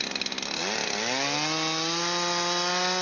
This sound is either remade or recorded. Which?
recorded